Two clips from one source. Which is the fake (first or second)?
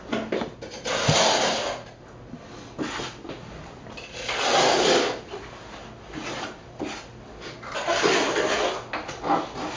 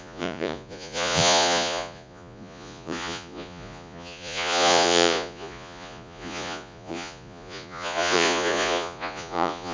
second